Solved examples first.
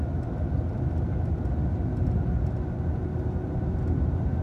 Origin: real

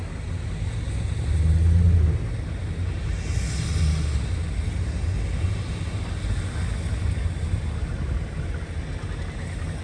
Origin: real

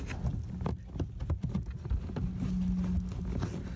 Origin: real